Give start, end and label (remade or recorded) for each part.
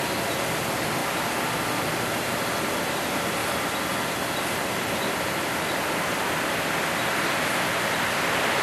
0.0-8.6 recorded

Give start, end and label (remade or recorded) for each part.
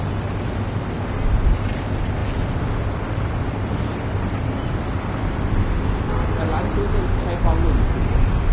0.0-2.2 recorded; 2.2-6.4 remade; 6.4-8.5 recorded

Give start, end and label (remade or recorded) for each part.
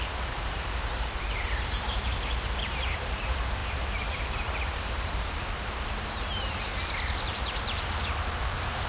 0.0-6.7 remade; 6.7-7.3 recorded; 7.3-8.9 remade